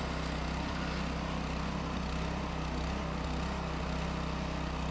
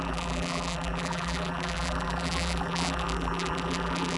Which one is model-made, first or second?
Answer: second